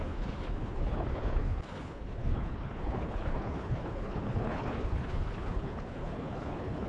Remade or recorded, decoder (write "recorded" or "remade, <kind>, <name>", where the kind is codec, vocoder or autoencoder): remade, codec, HILCodec